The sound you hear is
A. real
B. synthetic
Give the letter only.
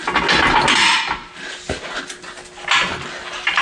A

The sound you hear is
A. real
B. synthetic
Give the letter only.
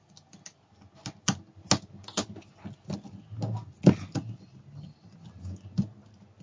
A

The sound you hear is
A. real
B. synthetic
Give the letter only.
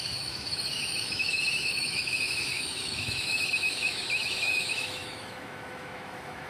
B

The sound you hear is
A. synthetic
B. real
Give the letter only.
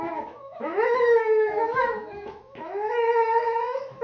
A